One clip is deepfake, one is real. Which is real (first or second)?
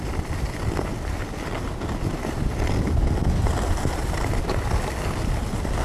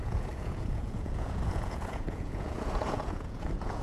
first